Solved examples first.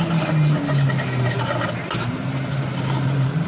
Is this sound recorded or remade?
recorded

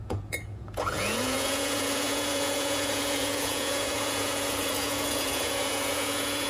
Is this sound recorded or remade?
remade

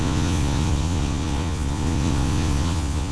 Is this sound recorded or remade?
remade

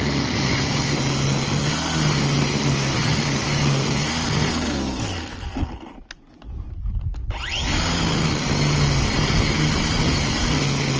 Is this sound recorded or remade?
recorded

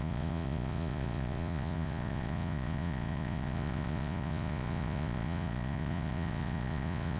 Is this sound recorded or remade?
remade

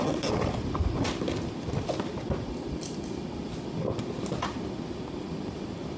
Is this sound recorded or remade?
recorded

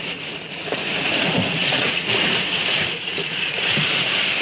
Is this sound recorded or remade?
remade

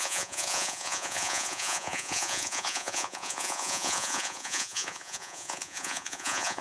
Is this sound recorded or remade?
remade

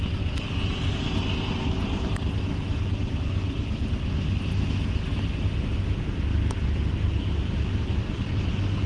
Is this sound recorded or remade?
recorded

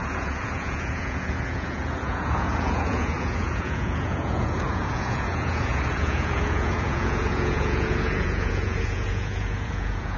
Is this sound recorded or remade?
remade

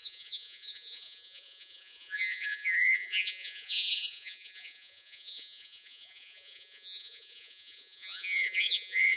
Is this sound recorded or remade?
remade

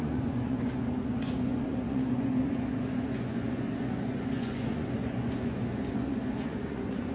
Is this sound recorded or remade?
remade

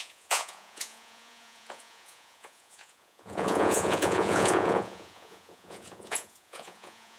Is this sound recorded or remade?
remade